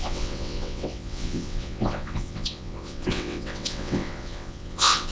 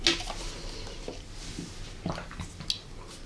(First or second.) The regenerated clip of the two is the first